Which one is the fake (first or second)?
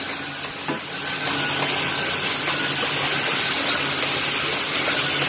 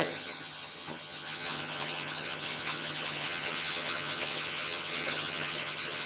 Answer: second